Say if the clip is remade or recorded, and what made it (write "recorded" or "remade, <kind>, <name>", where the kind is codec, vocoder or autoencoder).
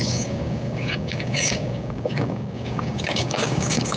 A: remade, codec, DAC